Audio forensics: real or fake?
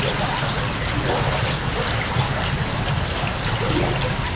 real